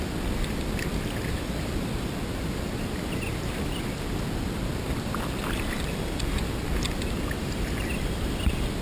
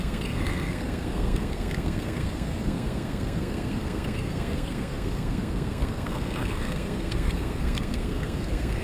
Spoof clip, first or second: second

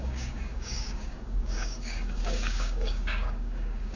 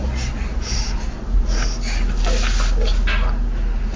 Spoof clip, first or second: first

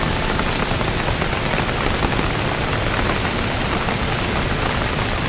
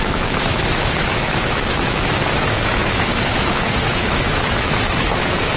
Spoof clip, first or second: second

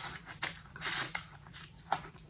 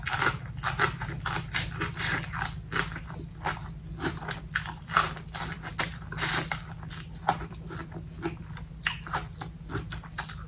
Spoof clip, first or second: first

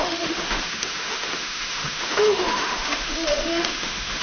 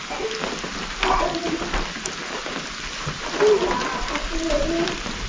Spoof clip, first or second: first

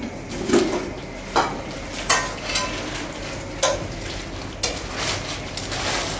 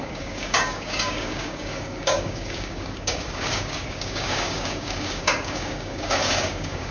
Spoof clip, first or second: second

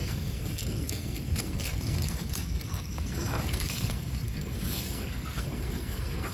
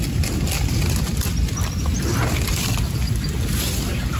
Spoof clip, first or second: first